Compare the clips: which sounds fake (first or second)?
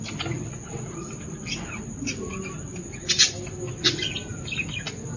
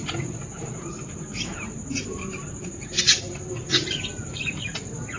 second